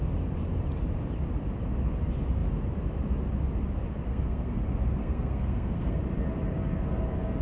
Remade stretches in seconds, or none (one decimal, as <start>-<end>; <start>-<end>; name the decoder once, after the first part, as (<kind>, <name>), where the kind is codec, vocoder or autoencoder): 4.1-4.6 (codec, SNAC); 5.0-6.0